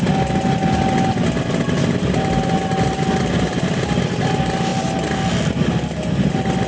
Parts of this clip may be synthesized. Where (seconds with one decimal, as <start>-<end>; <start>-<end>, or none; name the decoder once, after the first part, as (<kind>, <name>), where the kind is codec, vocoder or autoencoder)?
none